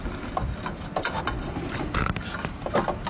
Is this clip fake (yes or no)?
no